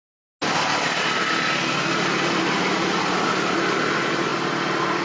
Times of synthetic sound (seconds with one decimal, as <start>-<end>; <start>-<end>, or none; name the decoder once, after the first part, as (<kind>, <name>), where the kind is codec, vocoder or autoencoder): none